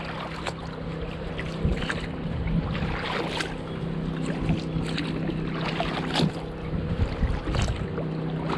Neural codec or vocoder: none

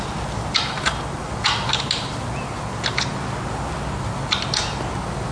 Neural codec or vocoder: none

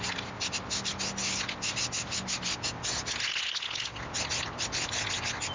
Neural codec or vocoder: none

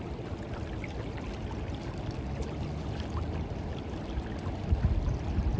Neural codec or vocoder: none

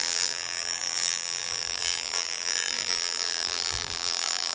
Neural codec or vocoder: vocoder, BigVGAN v2